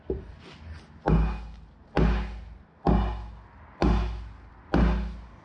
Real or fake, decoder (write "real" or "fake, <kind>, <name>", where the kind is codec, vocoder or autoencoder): real